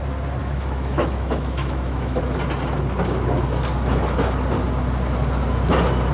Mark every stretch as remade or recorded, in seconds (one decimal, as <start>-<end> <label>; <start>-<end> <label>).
0.0-0.4 recorded; 0.4-2.2 remade; 2.2-6.1 recorded